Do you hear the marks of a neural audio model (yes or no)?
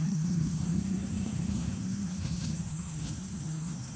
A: yes